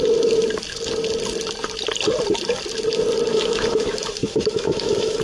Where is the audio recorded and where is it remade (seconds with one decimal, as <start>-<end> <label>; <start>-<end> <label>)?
0.0-3.3 recorded; 3.3-5.2 remade